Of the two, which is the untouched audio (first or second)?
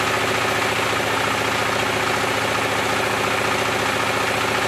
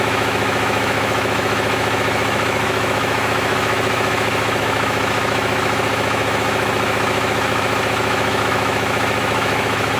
first